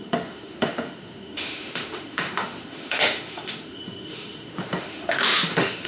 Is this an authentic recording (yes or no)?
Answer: no